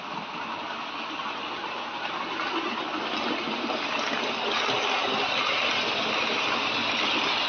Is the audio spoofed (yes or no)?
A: no